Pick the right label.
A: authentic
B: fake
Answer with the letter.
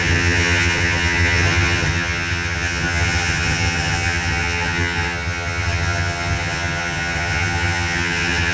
B